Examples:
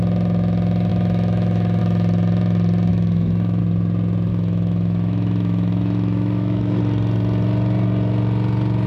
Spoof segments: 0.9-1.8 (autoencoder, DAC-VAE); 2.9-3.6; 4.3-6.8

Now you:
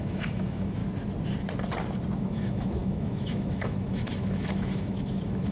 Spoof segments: 0.0-0.8 (autoencoder, DAC-VAE); 2.2-5.5

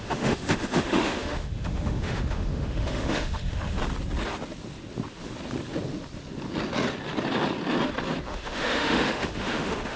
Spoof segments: 0.0-3.8 (autoencoder, DAC-VAE); 8.3-10.0

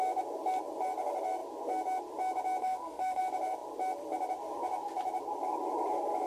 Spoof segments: 2.6-3.2 (autoencoder, DAC-VAE)

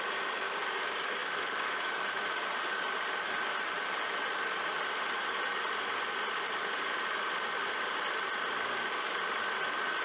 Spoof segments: 1.2-1.9 (autoencoder, DAC-VAE)

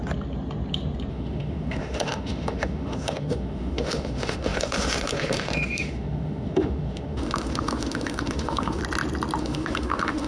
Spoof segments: 1.1-8.8 (autoencoder, DAC-VAE); 9.4-10.3